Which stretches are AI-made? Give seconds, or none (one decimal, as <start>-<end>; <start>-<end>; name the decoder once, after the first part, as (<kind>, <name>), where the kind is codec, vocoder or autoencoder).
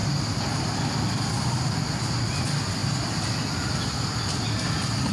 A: none